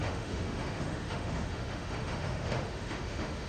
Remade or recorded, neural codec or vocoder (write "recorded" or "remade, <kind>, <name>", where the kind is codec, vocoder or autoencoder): remade, autoencoder, DAC-VAE